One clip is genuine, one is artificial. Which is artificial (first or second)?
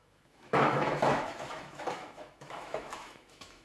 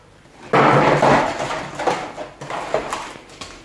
first